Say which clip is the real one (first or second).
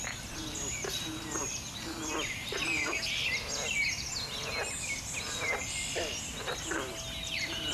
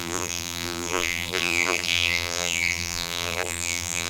first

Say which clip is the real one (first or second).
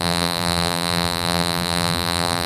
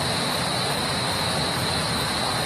second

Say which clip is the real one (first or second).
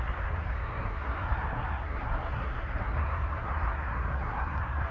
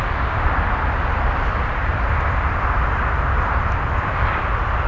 second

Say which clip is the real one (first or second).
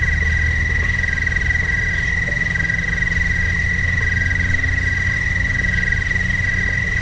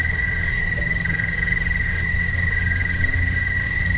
first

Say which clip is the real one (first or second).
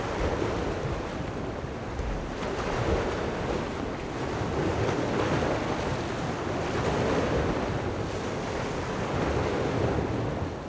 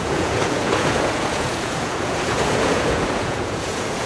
first